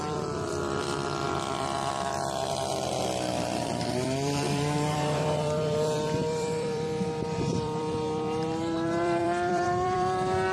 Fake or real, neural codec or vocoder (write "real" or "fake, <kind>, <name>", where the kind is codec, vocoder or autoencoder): fake, vocoder, BigVGAN v2